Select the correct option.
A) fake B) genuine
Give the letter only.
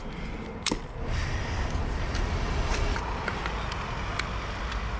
B